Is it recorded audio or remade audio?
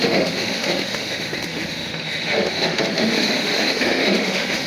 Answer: remade